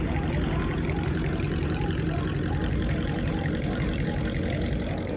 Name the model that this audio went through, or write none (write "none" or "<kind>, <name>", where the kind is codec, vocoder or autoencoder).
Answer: vocoder, BigVGAN v2